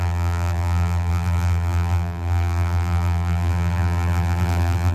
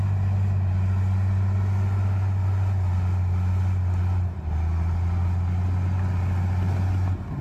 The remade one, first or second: first